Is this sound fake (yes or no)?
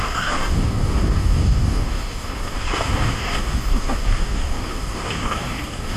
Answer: yes